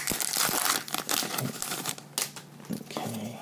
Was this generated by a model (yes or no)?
no